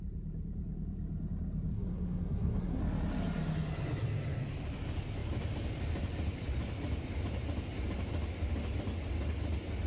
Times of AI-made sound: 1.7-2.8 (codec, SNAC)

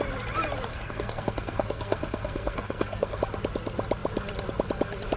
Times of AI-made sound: 0.7-3.2 (codec, SNAC)

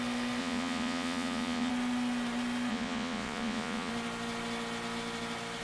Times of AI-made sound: 0.4-1.7 (vocoder, Vocos); 2.7-3.9

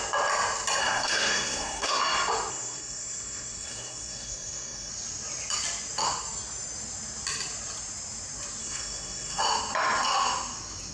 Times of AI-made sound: 0.8-2.0 (codec, SNAC); 2.5-4.9; 8.6-9.4